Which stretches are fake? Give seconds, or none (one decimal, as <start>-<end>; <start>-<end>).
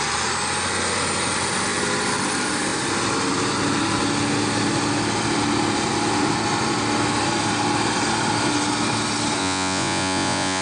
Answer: 9.4-10.6